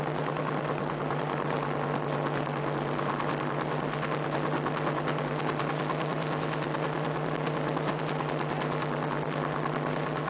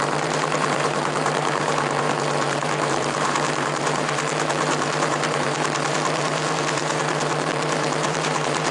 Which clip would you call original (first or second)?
first